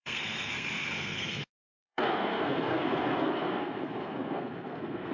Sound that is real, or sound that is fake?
fake